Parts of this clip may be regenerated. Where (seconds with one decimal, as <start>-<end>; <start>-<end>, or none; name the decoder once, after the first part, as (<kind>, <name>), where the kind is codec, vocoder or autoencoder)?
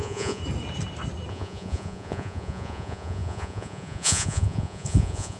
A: 0.0-0.4 (vocoder, Vocos); 1.3-5.4